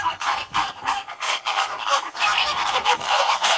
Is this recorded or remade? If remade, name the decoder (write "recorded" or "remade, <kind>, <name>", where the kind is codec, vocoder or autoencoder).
remade, codec, SNAC